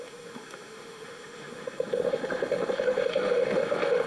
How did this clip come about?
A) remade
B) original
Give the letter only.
A